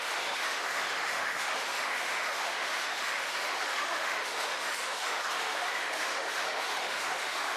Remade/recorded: remade